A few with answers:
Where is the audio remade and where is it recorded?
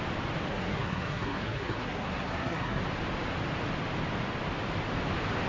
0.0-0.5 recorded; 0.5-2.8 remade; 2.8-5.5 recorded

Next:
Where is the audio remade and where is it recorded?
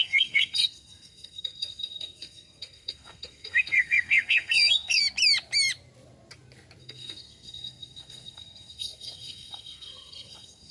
0.0-5.0 remade; 5.0-6.8 recorded; 6.8-10.7 remade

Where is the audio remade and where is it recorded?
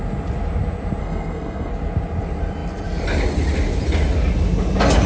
0.0-1.0 recorded; 1.0-1.7 remade; 1.7-5.1 recorded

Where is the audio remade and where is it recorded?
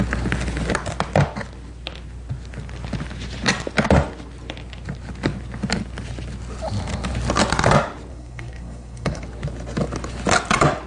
0.0-8.1 recorded; 8.1-9.2 remade; 9.2-10.9 recorded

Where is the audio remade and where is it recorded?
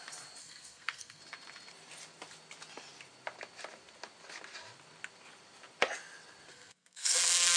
0.0-0.4 recorded; 0.4-1.2 remade; 1.2-6.5 recorded; 6.5-7.6 remade